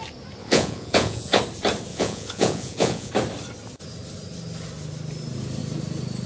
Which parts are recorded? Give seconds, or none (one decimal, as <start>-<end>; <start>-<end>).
0.0-0.4; 1.4-1.9; 3.1-6.3